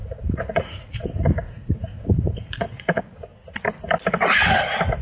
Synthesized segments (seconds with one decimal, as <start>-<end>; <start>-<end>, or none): 0.0-3.0